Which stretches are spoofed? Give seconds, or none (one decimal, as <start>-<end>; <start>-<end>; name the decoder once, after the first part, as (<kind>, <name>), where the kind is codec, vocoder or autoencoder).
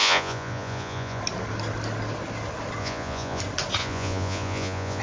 0.0-1.2 (vocoder, Vocos); 2.8-3.4; 3.8-5.0